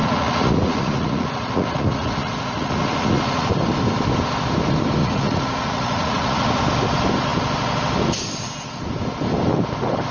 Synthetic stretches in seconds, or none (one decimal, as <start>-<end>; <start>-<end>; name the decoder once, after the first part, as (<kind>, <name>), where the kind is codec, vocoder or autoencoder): 0.0-3.5 (vocoder, Vocos); 5.0-6.6